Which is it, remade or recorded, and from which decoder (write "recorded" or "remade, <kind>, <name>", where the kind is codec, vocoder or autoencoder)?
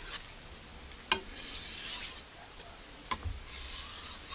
recorded